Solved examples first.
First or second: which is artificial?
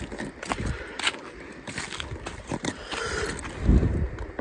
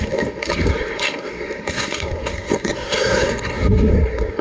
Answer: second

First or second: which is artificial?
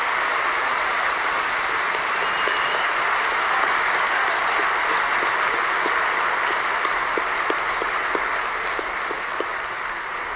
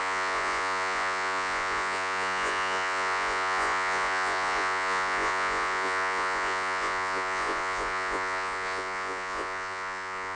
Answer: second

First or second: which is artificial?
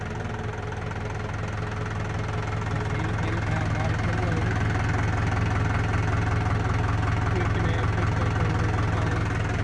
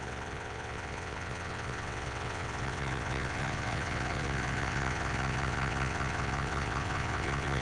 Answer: second